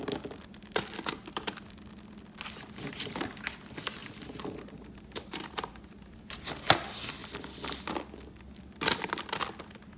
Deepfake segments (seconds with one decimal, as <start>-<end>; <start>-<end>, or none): 4.0-6.5